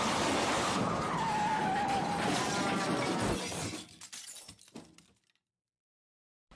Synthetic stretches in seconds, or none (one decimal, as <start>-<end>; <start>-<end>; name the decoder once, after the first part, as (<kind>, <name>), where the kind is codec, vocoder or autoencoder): 0.0-1.6 (vocoder, BigVGAN v2); 4.4-6.6